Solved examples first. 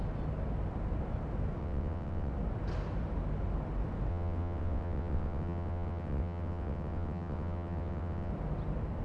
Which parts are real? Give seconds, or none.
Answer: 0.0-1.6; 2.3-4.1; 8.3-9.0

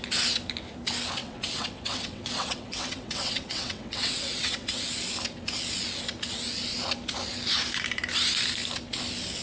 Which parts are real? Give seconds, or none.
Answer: 0.0-1.2; 4.8-9.4

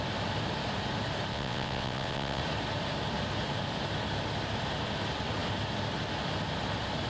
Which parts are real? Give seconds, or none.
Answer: 0.0-1.3; 2.4-7.1

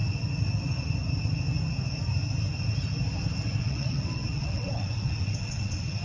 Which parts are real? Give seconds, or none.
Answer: 0.0-3.6

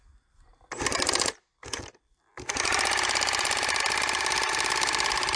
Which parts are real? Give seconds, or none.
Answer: 0.0-5.4

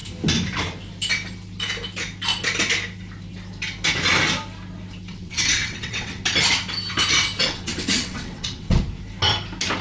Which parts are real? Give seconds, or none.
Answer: 0.0-5.1; 6.2-7.4; 8.8-9.8

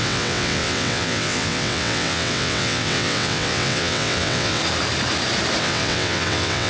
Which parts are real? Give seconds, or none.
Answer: 4.6-5.6